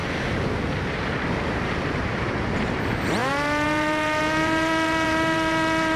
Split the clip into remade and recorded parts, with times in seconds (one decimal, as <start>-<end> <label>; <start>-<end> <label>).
0.0-1.3 recorded; 1.3-6.0 remade